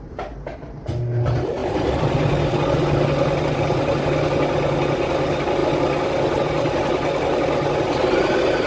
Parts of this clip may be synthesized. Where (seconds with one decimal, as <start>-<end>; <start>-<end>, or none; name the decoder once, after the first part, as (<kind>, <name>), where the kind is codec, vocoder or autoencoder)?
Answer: 1.6-4.0 (vocoder, BigVGAN v2); 5.6-6.4